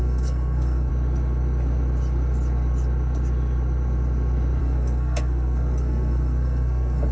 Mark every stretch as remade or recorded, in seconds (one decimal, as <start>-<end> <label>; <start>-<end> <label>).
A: 0.0-0.9 remade; 0.9-4.6 recorded; 4.6-7.1 remade